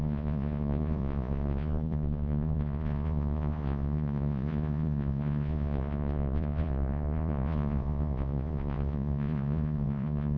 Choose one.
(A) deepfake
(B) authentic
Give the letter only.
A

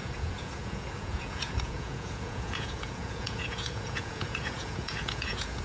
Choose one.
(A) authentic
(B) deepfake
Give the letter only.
B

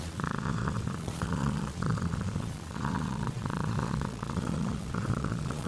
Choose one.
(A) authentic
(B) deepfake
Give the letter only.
B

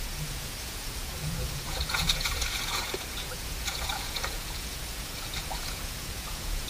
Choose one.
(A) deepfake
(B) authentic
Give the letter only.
A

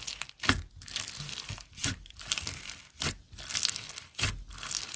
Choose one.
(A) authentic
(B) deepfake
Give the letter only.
A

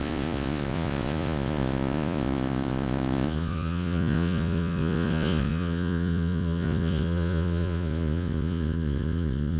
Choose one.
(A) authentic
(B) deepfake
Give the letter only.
B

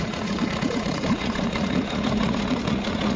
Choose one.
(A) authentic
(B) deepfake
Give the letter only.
B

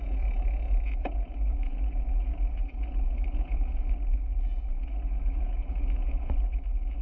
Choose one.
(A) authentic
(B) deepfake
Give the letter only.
B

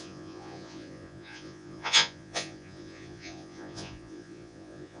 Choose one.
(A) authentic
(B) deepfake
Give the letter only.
B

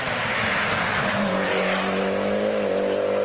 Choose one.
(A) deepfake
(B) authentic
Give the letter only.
B